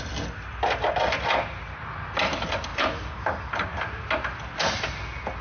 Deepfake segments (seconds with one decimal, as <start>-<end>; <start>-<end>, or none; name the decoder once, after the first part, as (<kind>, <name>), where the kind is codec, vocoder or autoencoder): none